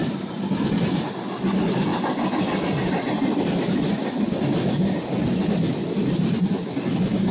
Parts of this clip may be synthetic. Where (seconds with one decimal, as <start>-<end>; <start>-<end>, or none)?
1.9-6.3